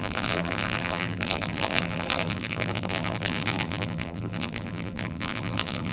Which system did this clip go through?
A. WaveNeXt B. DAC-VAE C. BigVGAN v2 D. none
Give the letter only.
C